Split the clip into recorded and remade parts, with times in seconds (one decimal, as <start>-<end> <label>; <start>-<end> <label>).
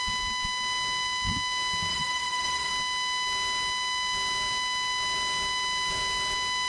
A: 0.0-1.9 recorded; 1.9-2.7 remade; 2.7-6.7 recorded